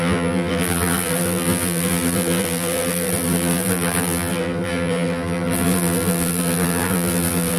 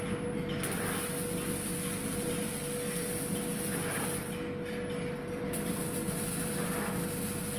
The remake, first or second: first